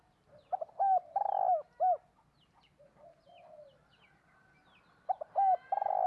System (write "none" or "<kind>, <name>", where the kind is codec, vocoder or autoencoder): none